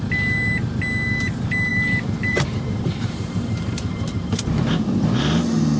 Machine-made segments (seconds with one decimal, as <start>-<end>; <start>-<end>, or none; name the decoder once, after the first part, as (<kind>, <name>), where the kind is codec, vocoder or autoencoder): 1.7-5.2 (vocoder, BigVGAN v2)